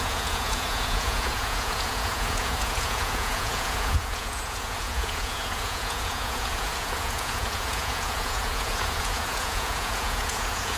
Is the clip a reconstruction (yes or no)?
yes